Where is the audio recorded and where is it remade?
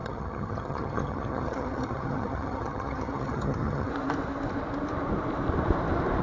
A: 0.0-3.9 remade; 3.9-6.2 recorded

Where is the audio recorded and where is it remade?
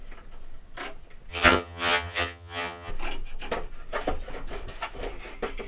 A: 0.0-1.3 recorded; 1.3-2.9 remade; 2.9-5.7 recorded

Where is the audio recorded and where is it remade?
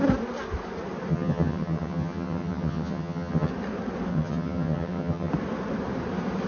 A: 0.0-1.1 recorded; 1.1-3.5 remade; 3.5-4.1 recorded; 4.1-5.3 remade; 5.3-6.5 recorded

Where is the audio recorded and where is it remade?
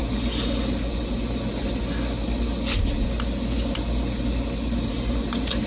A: 0.0-5.7 recorded